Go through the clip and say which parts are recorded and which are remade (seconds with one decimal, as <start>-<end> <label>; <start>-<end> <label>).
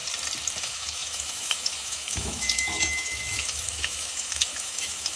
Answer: 0.0-0.6 recorded; 0.6-5.2 remade